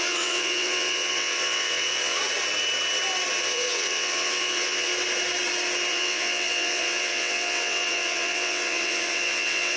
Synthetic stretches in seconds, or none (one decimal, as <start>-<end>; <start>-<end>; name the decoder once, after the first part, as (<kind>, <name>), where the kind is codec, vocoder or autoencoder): 0.0-2.2 (vocoder, WaveNeXt); 3.4-4.9; 5.9-9.8